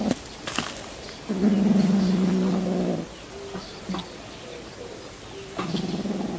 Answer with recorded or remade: recorded